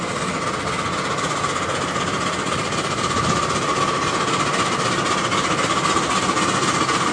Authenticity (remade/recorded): recorded